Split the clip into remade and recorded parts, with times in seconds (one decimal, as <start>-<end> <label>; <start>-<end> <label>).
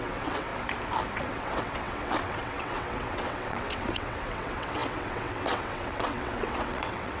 0.0-0.5 remade; 0.5-1.2 recorded; 1.2-7.2 remade